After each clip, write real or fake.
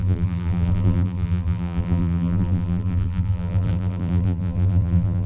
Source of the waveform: fake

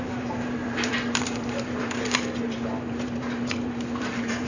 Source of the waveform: fake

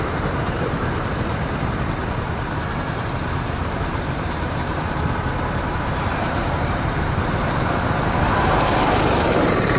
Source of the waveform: fake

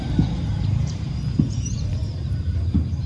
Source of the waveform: fake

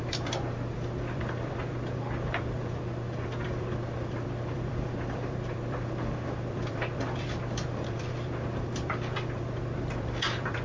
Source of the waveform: fake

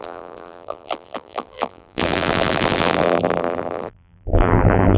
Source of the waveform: fake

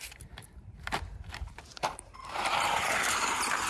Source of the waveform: fake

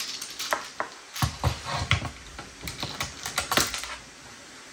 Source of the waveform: real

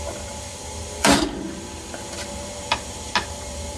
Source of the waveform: fake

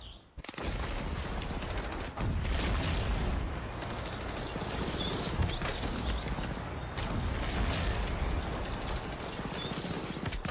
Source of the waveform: real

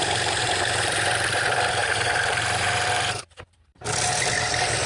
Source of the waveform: fake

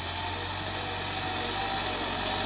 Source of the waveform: real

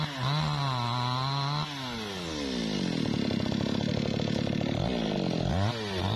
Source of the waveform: real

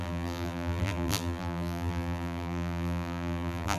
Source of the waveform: fake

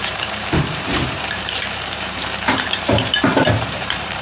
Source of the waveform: fake